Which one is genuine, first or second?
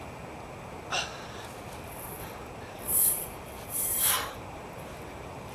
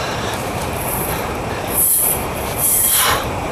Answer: first